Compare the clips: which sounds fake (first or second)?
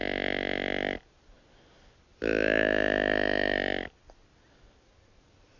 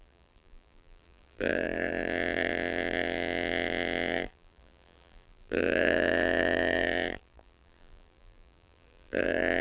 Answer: second